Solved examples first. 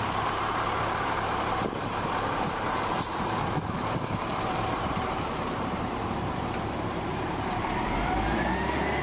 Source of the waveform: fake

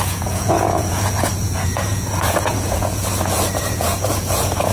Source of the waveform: fake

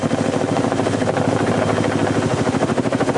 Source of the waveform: real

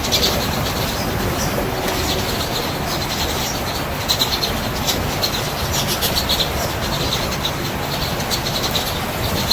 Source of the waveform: real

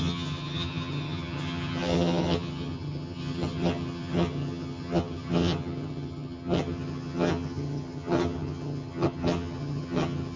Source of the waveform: fake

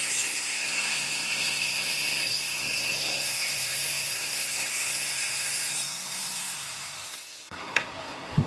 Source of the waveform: fake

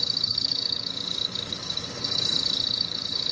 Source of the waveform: fake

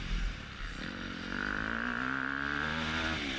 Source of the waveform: real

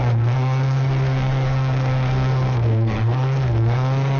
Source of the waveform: fake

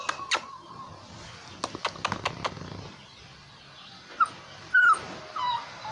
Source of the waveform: real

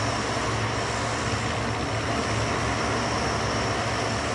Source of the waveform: real